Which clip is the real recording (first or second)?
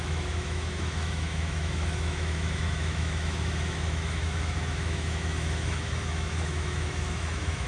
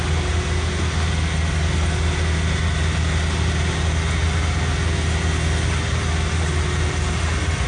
second